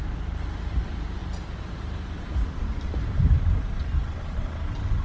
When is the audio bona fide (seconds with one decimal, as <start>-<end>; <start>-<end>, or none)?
0.0-5.0